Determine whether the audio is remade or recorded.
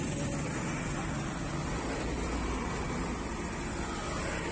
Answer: recorded